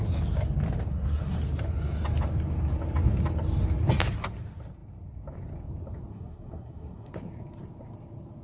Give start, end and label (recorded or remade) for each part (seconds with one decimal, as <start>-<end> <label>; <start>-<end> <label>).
0.0-0.9 recorded; 0.9-1.4 remade; 1.4-6.1 recorded; 6.1-7.1 remade; 7.1-8.4 recorded